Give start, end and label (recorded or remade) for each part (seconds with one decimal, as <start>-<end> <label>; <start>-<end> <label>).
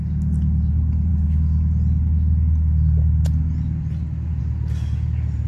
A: 0.0-5.5 recorded